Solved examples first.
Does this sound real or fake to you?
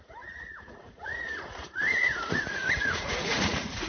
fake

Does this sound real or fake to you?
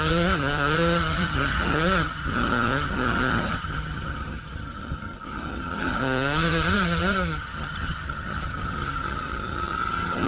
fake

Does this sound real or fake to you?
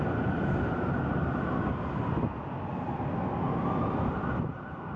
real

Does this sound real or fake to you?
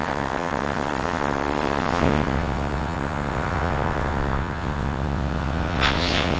fake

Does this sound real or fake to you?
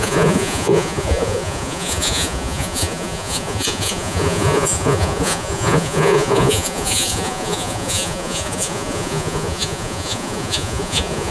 fake